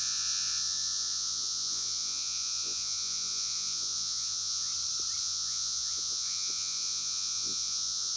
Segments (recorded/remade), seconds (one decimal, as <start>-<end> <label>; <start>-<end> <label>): 0.0-4.7 remade; 4.7-5.2 recorded; 5.2-8.2 remade